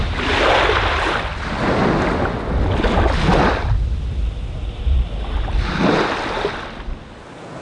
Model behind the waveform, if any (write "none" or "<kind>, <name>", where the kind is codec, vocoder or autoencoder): none